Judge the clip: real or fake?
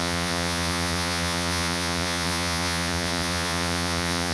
fake